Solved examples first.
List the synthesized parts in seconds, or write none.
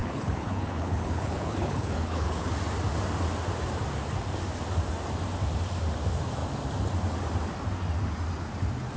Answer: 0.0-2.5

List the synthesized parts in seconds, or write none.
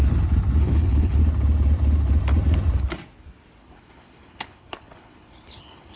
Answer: 0.6-1.2; 3.6-6.0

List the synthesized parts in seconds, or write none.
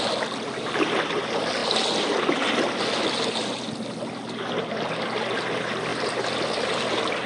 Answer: none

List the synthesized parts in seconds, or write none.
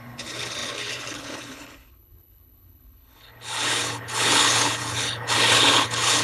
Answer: 0.0-6.2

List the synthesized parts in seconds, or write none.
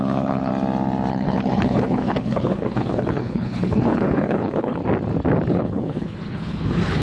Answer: 0.0-0.5; 1.1-4.8; 5.5-7.0